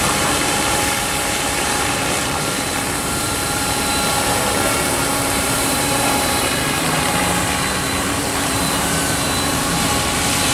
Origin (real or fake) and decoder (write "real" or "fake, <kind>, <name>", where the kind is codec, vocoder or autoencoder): fake, vocoder, BigVGAN v2